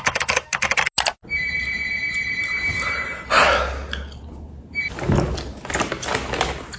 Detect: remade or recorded recorded